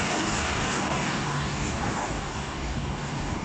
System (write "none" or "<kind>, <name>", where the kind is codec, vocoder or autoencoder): codec, DAC